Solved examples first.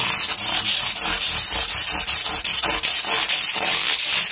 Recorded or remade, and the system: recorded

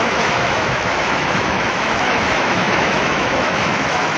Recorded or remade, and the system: remade, autoencoder, DAC-VAE